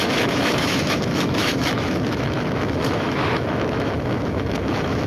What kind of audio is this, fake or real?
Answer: fake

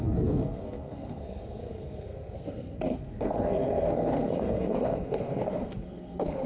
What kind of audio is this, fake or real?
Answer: fake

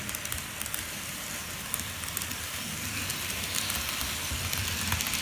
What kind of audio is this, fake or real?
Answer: real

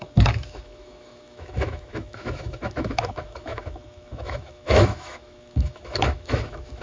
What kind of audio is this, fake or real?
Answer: fake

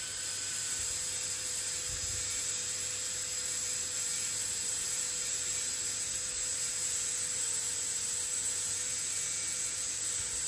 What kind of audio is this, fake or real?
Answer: fake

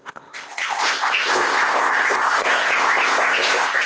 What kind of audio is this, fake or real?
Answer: fake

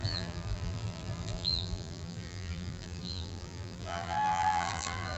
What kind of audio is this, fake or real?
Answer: fake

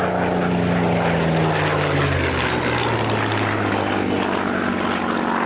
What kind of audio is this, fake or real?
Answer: real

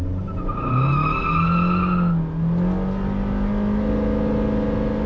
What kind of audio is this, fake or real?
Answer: real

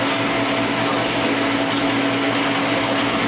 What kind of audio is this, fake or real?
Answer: real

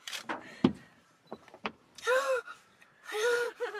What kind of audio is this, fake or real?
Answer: fake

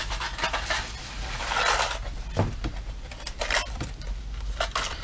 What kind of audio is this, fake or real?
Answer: real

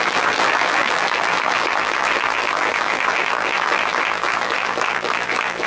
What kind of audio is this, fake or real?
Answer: fake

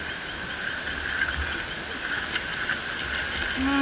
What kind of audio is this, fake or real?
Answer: real